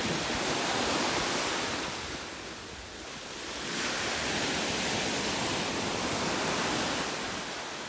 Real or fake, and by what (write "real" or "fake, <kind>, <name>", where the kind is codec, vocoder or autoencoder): real